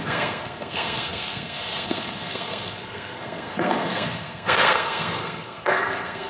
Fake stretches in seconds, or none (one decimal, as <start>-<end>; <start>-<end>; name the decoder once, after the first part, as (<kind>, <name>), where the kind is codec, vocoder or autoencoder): 0.0-6.3 (codec, SNAC)